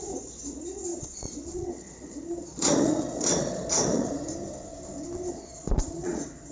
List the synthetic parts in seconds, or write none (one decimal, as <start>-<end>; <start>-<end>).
0.0-4.3; 5.3-6.5